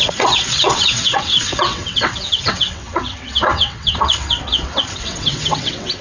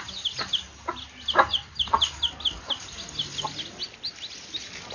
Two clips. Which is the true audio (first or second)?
second